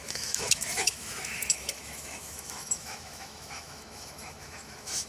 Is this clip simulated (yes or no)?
yes